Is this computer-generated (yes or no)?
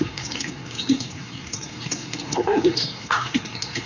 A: yes